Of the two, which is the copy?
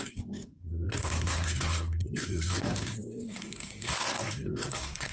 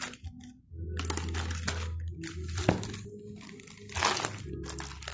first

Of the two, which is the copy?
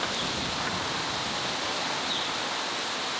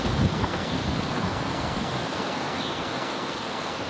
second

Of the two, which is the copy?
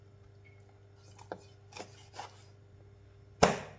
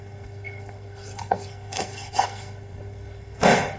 second